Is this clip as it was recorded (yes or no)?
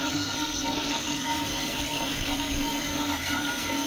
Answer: no